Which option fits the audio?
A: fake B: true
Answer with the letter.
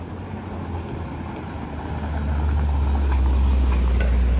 B